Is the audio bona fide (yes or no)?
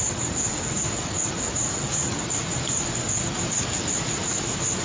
yes